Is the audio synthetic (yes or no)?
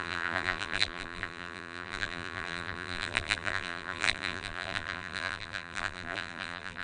yes